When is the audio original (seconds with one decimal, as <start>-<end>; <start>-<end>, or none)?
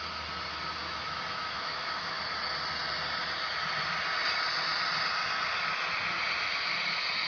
0.0-0.8; 2.2-7.3